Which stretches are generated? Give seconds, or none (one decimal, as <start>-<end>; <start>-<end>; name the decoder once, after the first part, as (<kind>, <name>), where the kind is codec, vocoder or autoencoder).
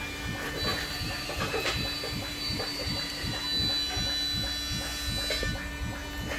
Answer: 0.7-3.4 (vocoder, BigVGAN v2)